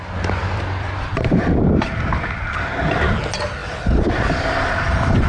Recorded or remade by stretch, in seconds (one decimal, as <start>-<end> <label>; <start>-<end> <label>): 0.0-0.4 recorded; 0.4-2.7 remade; 2.7-3.6 recorded; 3.6-5.3 remade